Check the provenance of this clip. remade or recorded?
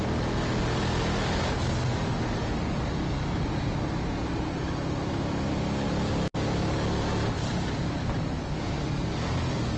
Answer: recorded